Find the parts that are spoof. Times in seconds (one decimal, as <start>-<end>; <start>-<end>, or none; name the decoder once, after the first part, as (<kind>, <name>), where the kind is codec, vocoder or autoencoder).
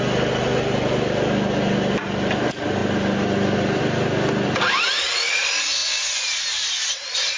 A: none